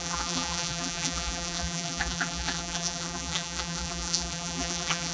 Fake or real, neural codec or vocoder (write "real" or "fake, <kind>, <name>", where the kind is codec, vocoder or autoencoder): fake, vocoder, BigVGAN v2